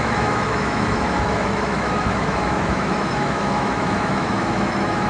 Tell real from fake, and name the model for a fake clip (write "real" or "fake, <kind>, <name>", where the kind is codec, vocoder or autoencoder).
fake, autoencoder, DAC-VAE